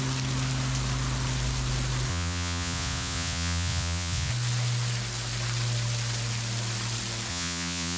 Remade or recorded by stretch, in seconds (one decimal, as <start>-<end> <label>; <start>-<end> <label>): 0.0-2.1 recorded; 2.1-4.3 remade; 4.3-7.3 recorded; 7.3-8.0 remade